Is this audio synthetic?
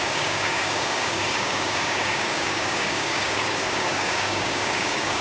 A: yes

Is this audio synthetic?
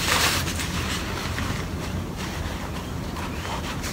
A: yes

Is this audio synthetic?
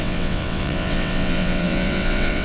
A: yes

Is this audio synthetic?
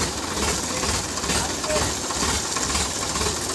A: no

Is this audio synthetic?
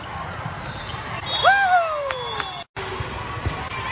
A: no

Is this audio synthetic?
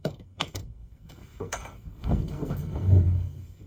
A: yes